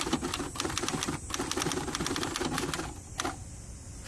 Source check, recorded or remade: recorded